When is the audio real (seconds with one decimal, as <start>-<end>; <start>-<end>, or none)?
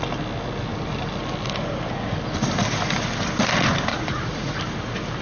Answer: 0.0-3.9; 4.6-5.2